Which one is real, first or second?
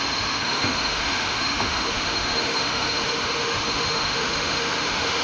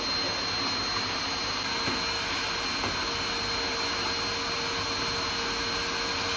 second